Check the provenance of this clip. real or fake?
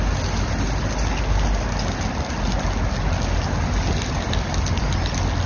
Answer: real